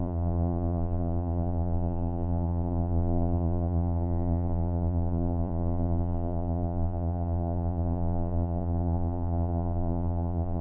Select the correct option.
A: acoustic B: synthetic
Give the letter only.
B